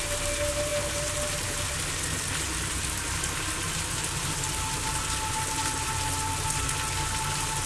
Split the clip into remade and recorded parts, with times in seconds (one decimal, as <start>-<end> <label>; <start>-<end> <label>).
0.0-7.7 recorded